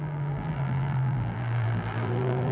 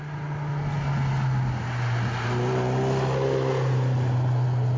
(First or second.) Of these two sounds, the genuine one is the second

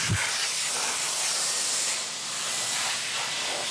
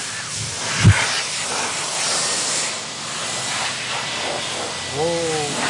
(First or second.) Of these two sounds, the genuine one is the second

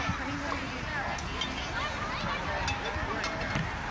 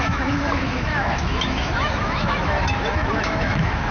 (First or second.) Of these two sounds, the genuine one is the first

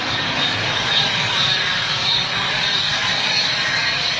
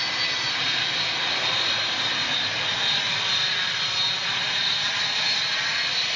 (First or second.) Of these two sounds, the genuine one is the second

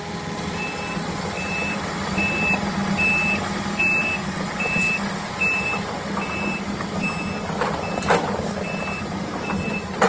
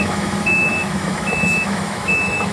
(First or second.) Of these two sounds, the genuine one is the first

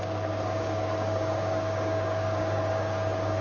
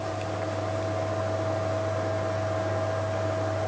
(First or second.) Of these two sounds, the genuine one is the second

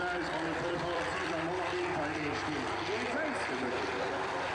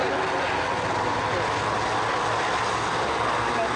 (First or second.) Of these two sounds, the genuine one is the second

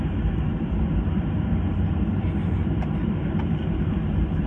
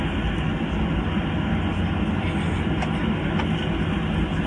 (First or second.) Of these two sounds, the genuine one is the second